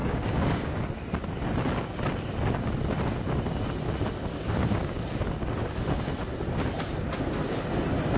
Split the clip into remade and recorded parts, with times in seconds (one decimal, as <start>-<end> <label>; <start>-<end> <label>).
0.0-0.9 remade; 0.9-4.3 recorded; 4.3-5.0 remade; 5.0-8.2 recorded